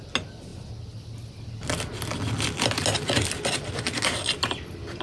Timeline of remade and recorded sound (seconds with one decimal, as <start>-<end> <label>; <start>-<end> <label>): 0.0-5.0 recorded